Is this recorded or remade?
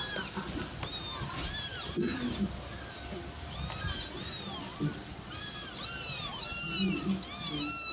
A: recorded